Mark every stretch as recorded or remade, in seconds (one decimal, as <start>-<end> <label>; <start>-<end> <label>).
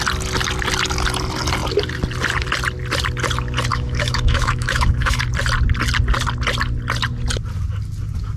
0.0-3.7 recorded; 3.7-5.2 remade; 5.2-8.4 recorded